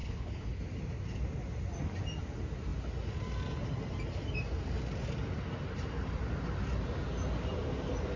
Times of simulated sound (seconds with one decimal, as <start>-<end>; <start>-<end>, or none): 0.0-0.6